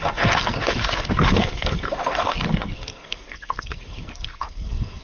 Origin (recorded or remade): remade